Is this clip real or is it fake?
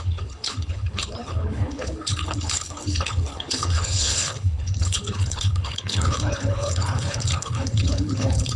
fake